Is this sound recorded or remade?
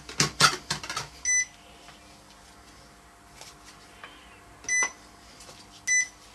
recorded